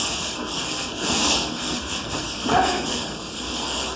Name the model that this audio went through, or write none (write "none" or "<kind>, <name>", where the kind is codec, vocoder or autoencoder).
codec, SNAC